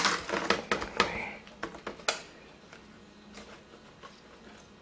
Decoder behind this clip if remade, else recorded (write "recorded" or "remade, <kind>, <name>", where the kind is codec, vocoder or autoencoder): recorded